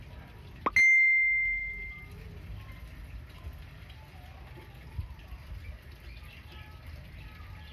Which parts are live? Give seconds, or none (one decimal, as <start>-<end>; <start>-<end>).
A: 0.0-7.7